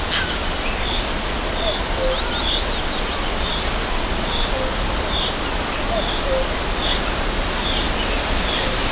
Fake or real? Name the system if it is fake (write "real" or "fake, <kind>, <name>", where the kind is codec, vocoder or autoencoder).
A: real